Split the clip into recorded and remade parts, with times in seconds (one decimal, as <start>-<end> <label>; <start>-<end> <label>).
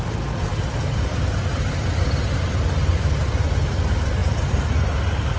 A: 0.0-5.4 recorded